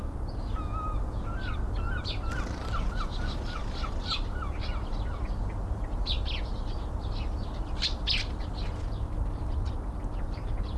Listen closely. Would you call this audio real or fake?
real